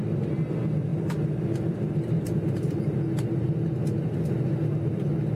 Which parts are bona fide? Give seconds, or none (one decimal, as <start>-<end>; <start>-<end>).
0.0-0.9; 3.0-5.4